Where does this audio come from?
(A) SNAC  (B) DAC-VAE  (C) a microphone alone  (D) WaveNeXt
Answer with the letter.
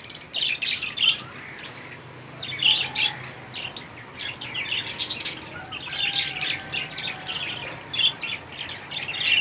C